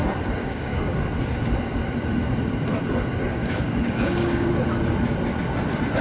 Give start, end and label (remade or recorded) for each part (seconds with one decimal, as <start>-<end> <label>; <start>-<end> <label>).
0.0-0.4 recorded; 0.4-1.0 remade; 1.0-3.4 recorded; 3.4-4.5 remade; 4.5-6.0 recorded